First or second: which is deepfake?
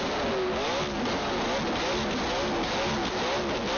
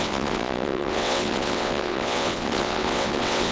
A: second